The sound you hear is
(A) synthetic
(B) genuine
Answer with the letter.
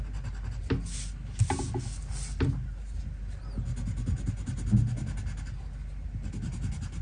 B